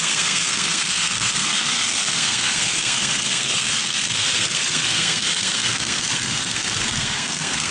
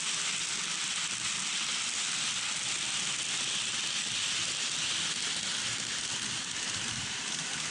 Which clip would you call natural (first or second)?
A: second